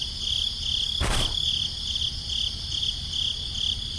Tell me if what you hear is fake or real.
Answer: real